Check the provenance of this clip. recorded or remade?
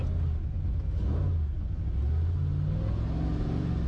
recorded